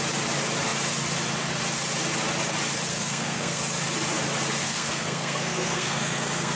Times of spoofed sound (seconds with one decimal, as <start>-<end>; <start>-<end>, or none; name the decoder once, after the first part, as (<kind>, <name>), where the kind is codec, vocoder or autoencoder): 2.9-3.6 (codec, SNAC); 4.6-6.6